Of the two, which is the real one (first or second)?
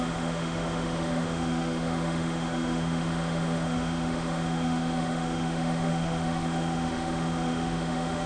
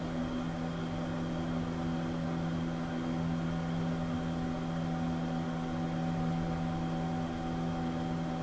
second